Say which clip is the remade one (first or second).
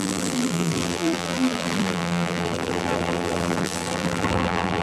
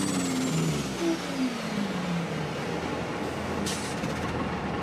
first